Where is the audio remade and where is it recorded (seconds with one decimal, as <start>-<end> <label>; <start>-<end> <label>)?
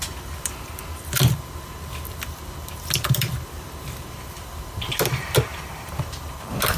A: 0.0-6.8 recorded